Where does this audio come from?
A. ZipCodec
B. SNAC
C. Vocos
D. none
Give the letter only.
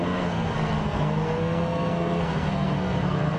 B